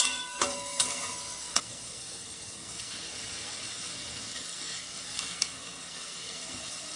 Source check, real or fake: fake